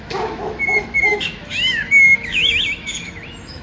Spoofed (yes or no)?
yes